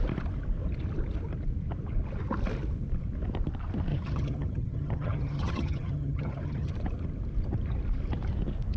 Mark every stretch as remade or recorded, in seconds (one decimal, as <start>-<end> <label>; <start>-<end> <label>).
0.0-3.9 recorded; 3.9-6.7 remade; 6.7-8.8 recorded